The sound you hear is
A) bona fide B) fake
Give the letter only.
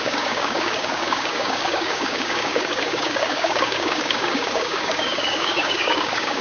B